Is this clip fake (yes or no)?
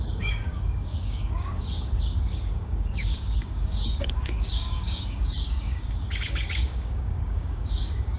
yes